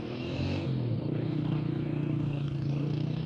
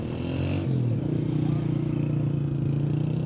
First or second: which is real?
second